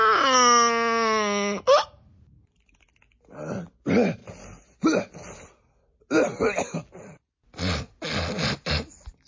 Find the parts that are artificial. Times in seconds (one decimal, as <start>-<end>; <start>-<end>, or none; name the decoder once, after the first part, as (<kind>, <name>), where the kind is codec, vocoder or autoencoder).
none